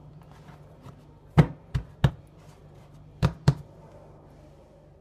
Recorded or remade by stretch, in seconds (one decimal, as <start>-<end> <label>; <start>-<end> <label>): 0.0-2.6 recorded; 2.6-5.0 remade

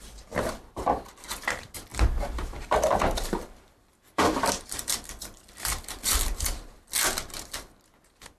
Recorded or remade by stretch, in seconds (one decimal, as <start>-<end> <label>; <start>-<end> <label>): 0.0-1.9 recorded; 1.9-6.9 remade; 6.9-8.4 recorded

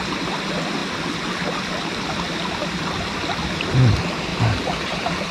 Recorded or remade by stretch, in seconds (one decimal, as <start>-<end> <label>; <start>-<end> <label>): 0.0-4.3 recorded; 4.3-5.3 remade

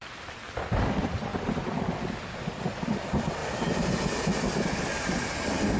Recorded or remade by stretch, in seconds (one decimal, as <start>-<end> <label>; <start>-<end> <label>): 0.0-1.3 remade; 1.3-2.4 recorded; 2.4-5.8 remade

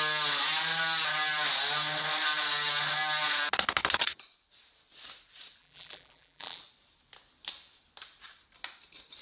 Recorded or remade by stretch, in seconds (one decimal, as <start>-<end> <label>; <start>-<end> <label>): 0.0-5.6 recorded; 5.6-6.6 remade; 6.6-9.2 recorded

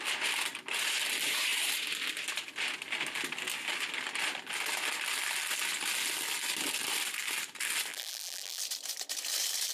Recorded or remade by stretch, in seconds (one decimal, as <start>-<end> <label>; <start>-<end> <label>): 0.0-7.9 recorded; 7.9-8.6 remade; 8.6-9.7 recorded

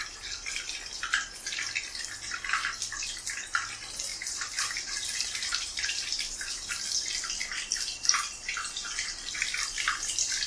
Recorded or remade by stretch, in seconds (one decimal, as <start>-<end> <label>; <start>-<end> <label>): 0.0-4.1 recorded; 4.1-6.0 remade; 6.0-10.5 recorded